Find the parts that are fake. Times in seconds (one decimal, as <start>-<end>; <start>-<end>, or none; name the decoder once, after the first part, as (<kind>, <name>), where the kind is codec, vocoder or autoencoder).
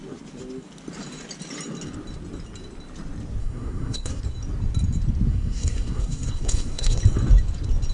3.4-4.2 (codec, SNAC); 5.3-7.0